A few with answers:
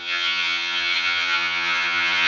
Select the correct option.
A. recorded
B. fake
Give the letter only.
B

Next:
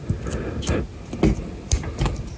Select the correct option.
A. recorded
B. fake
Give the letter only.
A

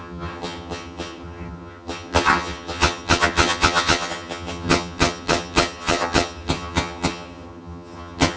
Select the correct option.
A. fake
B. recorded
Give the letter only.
A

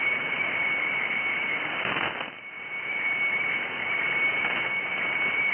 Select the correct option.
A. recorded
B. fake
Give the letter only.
A